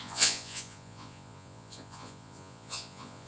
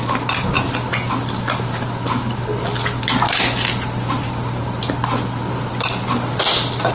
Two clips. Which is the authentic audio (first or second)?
second